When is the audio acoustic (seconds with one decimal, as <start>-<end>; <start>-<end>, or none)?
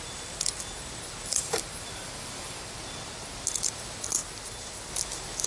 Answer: 0.0-1.3; 2.8-5.5